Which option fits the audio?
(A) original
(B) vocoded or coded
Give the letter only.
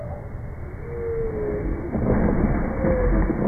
A